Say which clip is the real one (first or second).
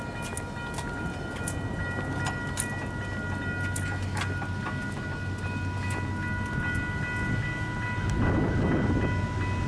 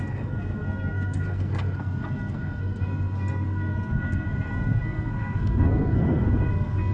first